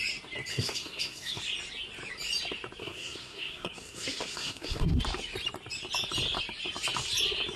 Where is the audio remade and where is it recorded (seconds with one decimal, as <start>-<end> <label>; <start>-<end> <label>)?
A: 0.0-0.5 recorded; 0.5-1.4 remade; 1.4-2.8 recorded; 2.8-5.0 remade; 5.0-7.6 recorded